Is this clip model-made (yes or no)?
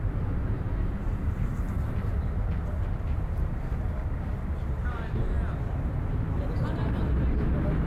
no